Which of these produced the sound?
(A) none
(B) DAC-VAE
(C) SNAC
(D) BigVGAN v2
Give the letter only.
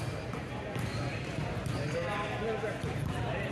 A